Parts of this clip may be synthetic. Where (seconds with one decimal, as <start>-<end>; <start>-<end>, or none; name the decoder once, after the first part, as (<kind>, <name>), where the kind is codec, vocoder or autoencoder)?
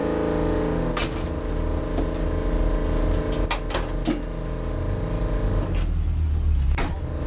none